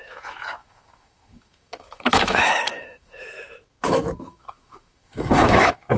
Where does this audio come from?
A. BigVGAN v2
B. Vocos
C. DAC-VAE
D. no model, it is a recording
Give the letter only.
C